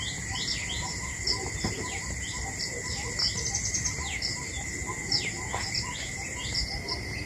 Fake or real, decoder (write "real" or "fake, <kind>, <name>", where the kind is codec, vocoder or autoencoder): fake, vocoder, BigVGAN v2